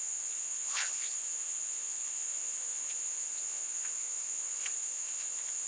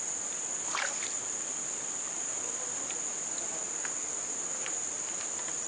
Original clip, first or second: second